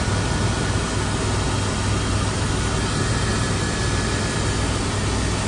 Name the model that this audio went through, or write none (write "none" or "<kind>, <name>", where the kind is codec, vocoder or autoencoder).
none